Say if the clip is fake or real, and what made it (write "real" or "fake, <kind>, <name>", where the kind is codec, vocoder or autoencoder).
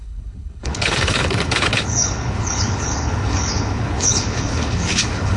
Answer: fake, codec, HILCodec